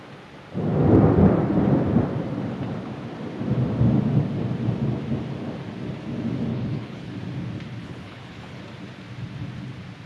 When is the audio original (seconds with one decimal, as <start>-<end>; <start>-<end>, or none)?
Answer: 0.0-6.5; 7.1-7.8; 8.6-10.1